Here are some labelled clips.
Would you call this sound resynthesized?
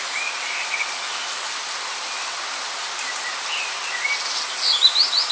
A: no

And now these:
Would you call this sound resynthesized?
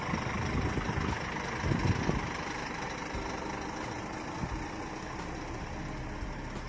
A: no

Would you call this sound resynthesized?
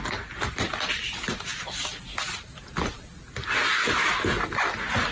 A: no